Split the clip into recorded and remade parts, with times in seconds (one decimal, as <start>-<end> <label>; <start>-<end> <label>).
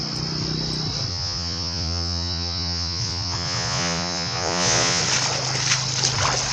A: 0.0-1.1 recorded; 1.1-5.0 remade; 5.0-6.5 recorded